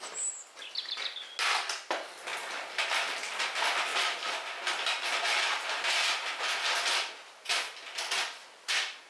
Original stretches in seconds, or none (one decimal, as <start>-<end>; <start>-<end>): 0.0-9.1